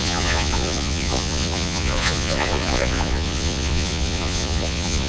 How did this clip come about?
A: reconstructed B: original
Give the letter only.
A